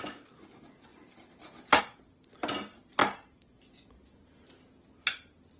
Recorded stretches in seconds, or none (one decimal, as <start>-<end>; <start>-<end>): 0.0-0.9; 1.8-3.0; 4.5-5.6